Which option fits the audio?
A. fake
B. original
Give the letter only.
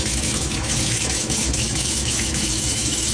A